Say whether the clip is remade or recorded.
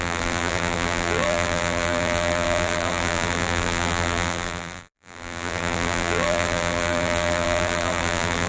remade